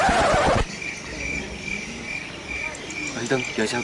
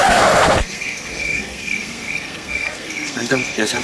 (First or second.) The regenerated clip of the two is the second